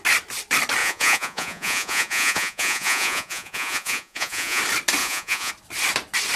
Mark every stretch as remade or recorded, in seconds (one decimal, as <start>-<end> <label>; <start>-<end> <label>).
0.0-0.8 recorded; 0.8-4.6 remade; 4.6-5.0 recorded; 5.0-5.5 remade; 5.5-6.4 recorded